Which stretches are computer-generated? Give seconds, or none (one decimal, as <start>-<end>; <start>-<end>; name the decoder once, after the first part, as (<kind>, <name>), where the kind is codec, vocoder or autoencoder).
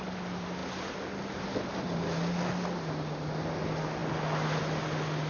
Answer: none